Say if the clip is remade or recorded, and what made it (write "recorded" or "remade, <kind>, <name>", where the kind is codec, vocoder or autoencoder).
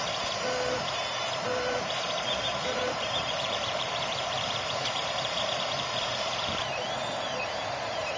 remade, vocoder, BigVGAN v2